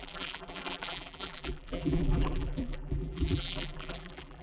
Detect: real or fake fake